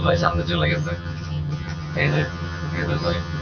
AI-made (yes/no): yes